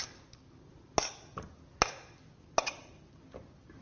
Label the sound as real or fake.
real